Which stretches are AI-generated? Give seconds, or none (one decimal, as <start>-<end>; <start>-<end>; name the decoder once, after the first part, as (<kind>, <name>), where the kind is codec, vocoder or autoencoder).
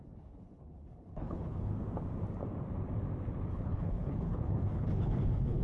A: 0.0-1.7 (codec, HILCodec); 3.5-5.6